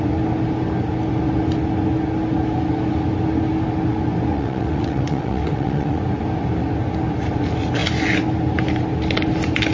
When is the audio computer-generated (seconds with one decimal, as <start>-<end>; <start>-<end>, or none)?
4.3-6.0